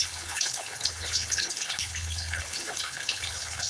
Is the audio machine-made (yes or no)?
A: yes